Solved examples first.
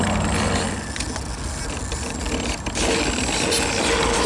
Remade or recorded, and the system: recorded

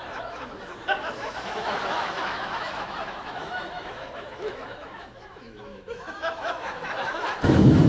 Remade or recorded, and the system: remade, autoencoder, DAC-VAE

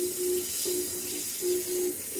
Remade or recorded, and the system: recorded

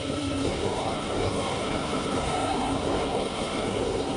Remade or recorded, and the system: remade, codec, SNAC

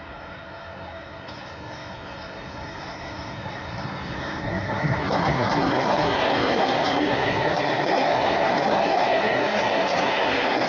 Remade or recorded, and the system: remade, codec, SNAC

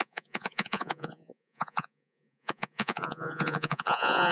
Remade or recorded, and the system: remade, vocoder, Vocos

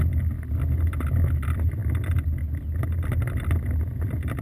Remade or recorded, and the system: recorded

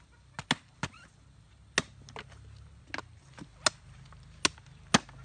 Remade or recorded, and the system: recorded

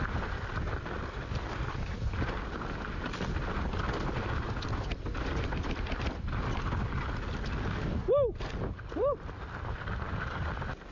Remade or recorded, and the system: recorded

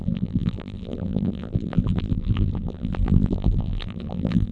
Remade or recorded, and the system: remade, vocoder, BigVGAN v2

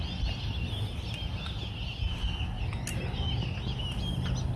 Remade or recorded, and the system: recorded